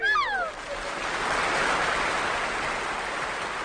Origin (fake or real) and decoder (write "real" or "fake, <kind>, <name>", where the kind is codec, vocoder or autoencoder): real